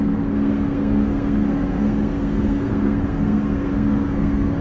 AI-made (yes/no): yes